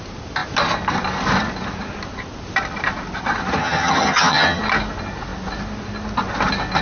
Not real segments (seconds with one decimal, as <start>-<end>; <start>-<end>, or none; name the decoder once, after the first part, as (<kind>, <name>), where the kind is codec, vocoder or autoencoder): 3.6-4.6 (vocoder, HiFi-GAN)